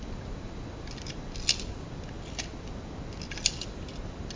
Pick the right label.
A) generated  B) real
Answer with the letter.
B